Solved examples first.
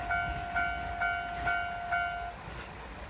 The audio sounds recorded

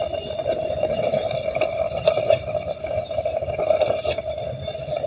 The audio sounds remade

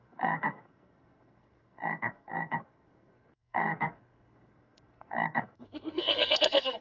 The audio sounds remade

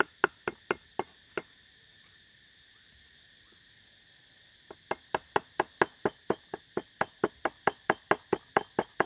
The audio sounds recorded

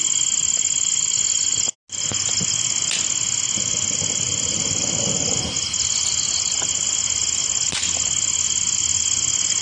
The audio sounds recorded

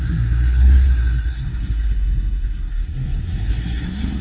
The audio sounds remade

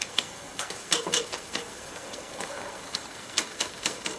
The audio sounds remade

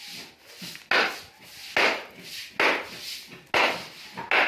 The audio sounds recorded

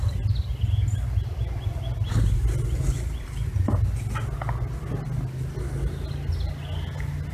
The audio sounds recorded